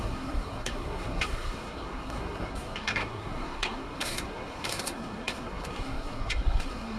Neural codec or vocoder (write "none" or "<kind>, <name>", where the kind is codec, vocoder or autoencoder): codec, SNAC